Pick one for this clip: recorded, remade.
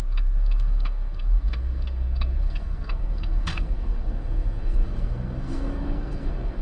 remade